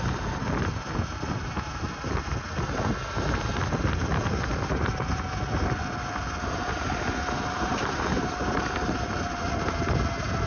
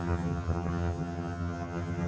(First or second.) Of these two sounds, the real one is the first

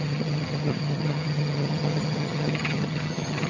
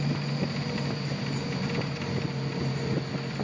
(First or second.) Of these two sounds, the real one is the second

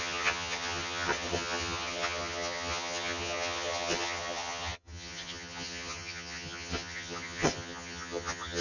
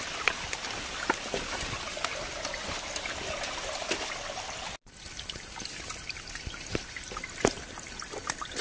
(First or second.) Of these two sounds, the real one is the second